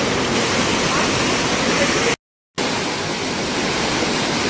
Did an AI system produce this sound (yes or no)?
no